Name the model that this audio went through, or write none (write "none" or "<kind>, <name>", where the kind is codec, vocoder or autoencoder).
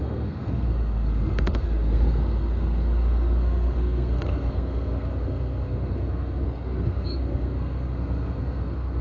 codec, SNAC